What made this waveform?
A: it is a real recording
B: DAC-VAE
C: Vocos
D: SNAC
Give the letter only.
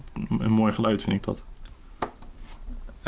A